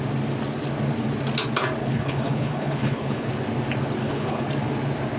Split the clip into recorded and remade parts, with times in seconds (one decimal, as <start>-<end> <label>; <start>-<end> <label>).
0.0-1.8 recorded; 1.8-3.3 remade; 3.3-4.0 recorded; 4.0-4.5 remade; 4.5-5.2 recorded